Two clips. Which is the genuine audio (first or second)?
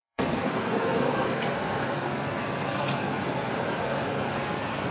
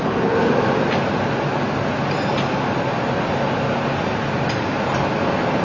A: second